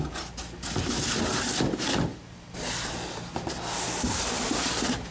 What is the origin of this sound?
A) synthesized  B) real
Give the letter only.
B